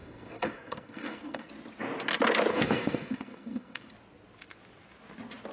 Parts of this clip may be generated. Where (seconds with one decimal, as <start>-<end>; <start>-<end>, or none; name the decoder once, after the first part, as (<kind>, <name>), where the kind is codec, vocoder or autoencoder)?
0.0-1.5 (codec, SNAC); 2.5-3.9